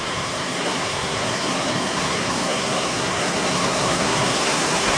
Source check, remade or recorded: remade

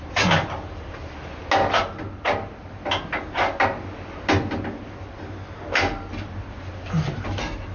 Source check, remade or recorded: recorded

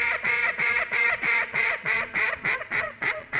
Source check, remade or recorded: remade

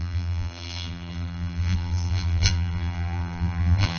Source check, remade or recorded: remade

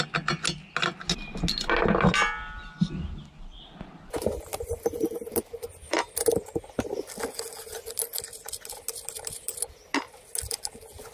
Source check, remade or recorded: recorded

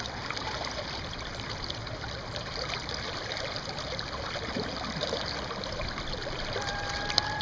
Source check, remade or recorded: remade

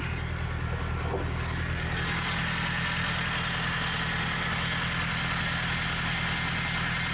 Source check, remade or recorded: recorded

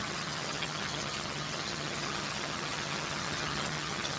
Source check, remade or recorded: remade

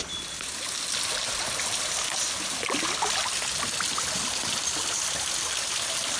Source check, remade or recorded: recorded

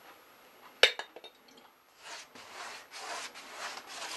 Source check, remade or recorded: recorded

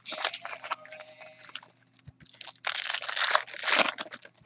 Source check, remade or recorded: recorded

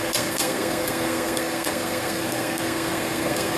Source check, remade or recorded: remade